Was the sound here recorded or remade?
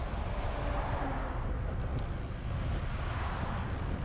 recorded